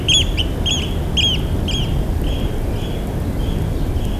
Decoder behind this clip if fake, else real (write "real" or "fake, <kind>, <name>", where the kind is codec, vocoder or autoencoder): real